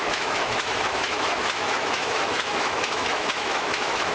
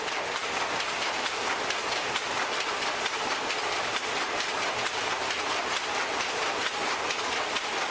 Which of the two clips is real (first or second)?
second